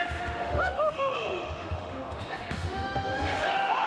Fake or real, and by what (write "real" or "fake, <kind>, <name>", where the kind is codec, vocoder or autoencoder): fake, autoencoder, DAC-VAE